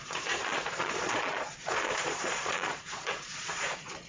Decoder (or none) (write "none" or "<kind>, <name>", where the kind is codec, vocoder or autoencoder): vocoder, Vocos